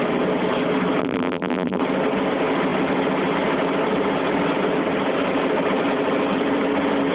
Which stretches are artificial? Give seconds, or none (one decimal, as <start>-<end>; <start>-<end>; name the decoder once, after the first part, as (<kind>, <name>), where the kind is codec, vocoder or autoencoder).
1.0-1.8 (vocoder, BigVGAN v2)